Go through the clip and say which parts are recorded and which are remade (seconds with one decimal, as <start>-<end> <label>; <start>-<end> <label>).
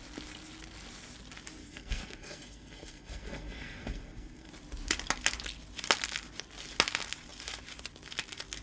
0.0-1.6 recorded; 1.6-4.5 remade; 4.5-8.6 recorded